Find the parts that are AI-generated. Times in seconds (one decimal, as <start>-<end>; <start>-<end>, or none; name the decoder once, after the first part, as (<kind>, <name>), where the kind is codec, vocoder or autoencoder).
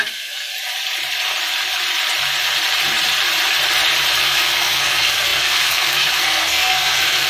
0.0-0.5 (codec, SNAC); 4.2-7.3